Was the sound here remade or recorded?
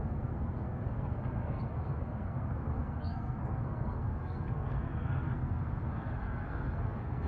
remade